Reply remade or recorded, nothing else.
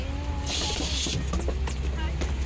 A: recorded